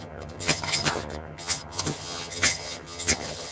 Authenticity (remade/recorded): remade